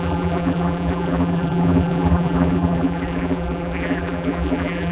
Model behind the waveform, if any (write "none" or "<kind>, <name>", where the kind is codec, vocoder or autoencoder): vocoder, BigVGAN v2